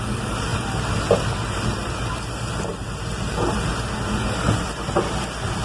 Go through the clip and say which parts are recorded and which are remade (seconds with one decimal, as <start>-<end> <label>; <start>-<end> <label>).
0.0-5.6 recorded